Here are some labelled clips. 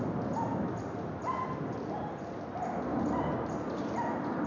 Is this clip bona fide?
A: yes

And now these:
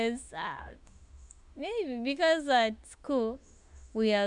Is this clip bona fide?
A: no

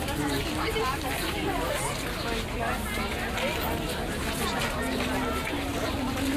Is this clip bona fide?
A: yes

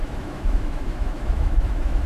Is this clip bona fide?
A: no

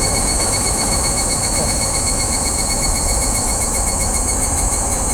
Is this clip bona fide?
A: no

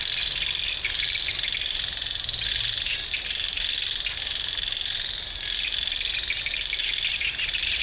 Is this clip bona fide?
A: yes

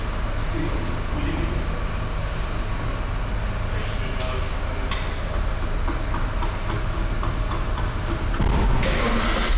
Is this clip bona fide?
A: yes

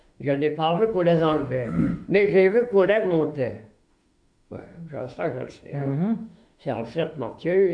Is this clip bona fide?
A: no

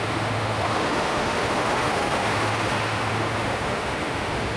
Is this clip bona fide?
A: no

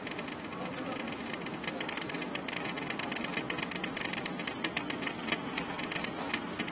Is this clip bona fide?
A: yes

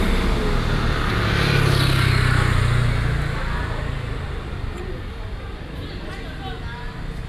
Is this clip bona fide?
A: yes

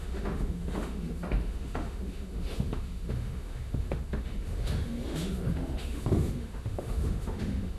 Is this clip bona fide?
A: no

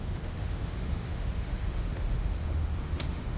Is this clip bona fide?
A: no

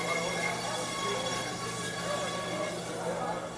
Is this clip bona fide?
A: yes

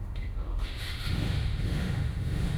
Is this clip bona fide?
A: no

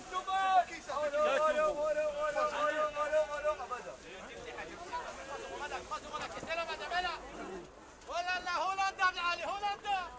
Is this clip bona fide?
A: yes